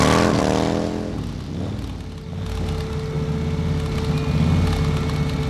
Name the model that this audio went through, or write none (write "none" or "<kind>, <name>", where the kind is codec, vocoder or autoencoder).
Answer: none